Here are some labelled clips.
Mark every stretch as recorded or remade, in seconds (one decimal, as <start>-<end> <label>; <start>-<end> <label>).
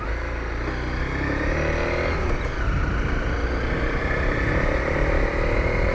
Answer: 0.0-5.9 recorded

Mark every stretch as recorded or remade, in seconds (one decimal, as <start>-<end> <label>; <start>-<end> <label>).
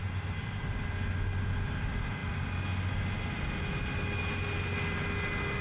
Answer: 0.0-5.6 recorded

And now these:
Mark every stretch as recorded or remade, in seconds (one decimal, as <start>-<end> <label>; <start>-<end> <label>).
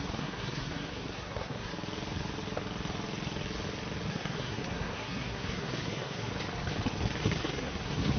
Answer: 0.0-1.7 remade; 1.7-4.1 recorded; 4.1-6.3 remade; 6.3-7.2 recorded; 7.2-8.2 remade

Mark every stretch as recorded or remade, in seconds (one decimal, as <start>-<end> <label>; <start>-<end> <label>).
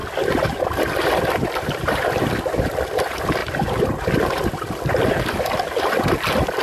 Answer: 0.0-6.6 recorded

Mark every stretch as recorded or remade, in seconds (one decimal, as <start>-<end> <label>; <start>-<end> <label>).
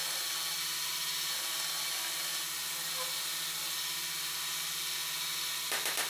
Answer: 0.0-6.1 recorded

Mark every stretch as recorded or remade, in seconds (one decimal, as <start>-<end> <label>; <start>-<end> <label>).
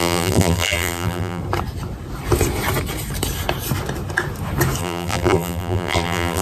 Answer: 0.0-1.4 remade; 1.4-4.8 recorded; 4.8-6.4 remade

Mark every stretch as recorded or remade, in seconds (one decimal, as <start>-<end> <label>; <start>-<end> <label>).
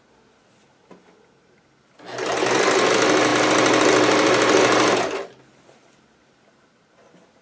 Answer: 0.0-7.4 recorded